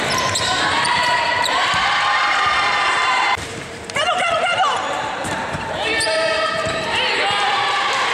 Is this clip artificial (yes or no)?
yes